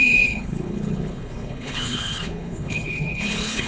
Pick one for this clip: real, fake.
fake